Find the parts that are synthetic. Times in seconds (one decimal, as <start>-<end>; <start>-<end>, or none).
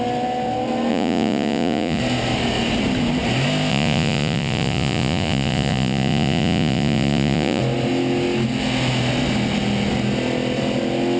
0.9-2.0; 3.7-7.6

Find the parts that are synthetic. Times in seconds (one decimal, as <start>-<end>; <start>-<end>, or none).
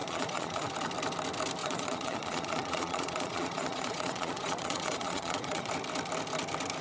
0.0-0.7; 1.6-5.7